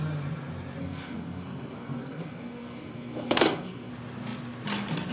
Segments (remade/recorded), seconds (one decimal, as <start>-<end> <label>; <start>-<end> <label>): 0.0-0.8 recorded; 0.8-3.9 remade; 3.9-5.1 recorded